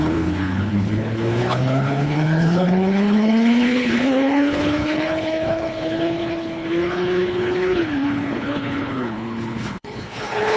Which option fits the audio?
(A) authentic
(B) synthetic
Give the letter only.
B